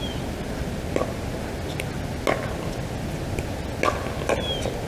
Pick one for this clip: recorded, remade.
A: recorded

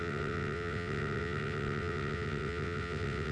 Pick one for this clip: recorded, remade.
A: remade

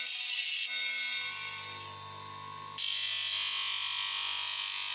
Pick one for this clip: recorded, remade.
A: recorded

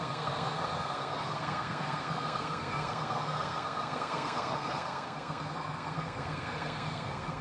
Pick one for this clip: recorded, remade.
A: remade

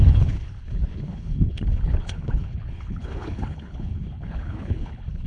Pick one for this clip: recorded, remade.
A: remade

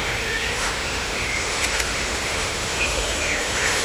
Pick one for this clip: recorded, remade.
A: remade